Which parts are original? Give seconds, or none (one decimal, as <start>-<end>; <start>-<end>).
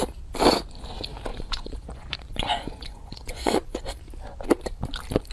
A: 0.0-1.3; 3.8-5.3